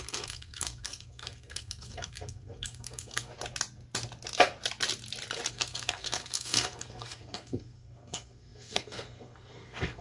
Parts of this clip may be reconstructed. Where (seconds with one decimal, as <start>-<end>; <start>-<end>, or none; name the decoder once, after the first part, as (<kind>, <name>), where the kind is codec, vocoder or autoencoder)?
0.0-3.3 (codec, SNAC); 5.5-10.0